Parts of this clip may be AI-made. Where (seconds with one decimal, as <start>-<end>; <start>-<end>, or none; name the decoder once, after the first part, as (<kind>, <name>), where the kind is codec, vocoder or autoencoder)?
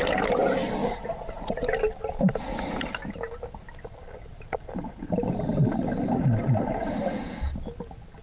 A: 0.8-1.7 (vocoder, Vocos)